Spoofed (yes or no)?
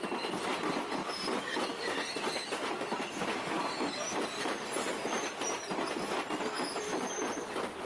no